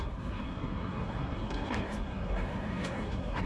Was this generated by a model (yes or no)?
yes